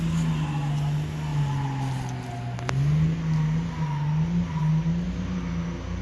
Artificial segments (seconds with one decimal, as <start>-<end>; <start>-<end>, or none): none